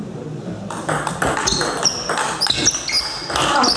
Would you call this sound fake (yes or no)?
no